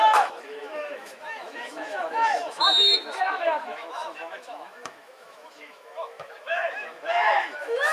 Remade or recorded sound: remade